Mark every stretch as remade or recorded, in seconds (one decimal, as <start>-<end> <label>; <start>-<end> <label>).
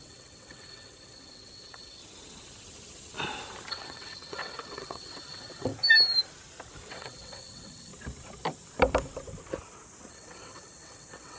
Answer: 0.0-2.0 remade; 2.0-3.7 recorded; 3.7-5.7 remade; 5.7-6.9 recorded; 6.9-7.9 remade; 7.9-10.1 recorded; 10.1-11.4 remade